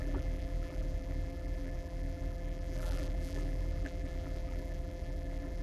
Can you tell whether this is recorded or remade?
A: remade